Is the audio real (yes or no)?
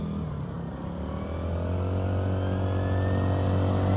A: yes